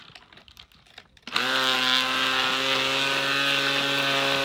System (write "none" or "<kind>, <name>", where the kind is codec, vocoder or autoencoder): none